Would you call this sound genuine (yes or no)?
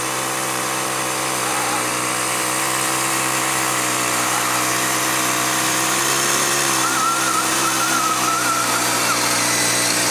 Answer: no